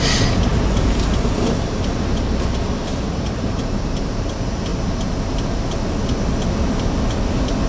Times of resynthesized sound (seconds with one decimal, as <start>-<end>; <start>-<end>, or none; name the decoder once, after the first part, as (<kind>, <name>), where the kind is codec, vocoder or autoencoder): 2.9-4.3 (vocoder, BigVGAN v2)